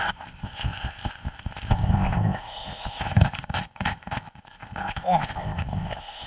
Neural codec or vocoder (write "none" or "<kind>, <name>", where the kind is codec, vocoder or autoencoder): codec, ZipCodec